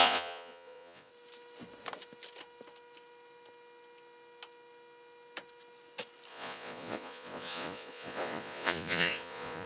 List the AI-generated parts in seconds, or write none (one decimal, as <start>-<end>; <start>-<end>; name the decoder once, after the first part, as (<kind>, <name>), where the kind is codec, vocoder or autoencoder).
0.0-1.1 (vocoder, Vocos); 6.3-9.7